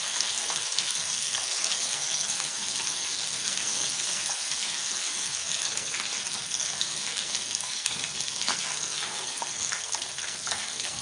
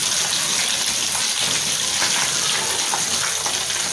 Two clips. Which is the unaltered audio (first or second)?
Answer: second